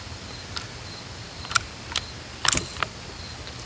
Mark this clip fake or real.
real